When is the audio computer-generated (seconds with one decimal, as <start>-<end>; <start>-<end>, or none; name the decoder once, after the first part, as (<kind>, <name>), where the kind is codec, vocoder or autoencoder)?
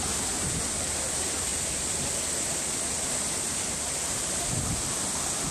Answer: none